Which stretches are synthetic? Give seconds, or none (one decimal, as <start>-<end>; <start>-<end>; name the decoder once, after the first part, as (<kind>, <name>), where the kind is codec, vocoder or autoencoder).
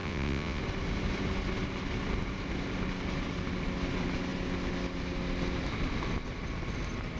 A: 0.0-0.6 (vocoder, WaveNeXt)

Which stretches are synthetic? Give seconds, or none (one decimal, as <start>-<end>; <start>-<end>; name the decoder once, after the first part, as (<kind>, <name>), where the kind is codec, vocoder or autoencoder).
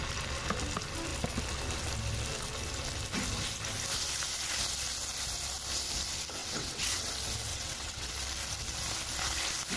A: 6.4-7.1 (vocoder, WaveNeXt); 7.5-8.1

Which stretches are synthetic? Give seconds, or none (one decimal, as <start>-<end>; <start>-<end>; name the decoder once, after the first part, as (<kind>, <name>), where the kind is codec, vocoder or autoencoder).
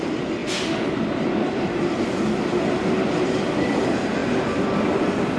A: none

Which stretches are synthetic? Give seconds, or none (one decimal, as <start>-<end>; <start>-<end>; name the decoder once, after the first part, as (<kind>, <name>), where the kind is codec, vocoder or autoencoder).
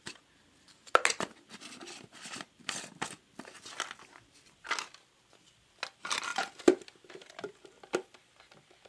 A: none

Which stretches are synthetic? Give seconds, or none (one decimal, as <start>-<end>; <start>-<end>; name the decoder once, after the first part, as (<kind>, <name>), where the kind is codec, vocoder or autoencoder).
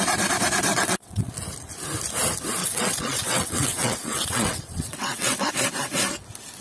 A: 0.7-1.3 (vocoder, WaveNeXt); 2.6-5.5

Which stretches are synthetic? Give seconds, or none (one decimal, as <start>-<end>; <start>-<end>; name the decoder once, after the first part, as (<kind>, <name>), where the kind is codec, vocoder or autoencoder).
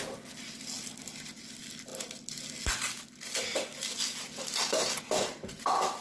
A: none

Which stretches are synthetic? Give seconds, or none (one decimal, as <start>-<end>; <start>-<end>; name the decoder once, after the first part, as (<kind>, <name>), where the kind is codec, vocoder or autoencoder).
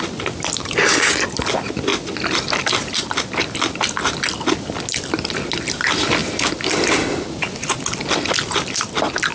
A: none